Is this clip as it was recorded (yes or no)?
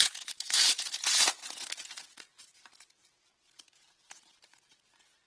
no